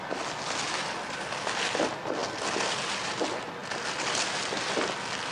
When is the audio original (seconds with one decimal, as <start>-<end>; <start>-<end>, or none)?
0.0-5.3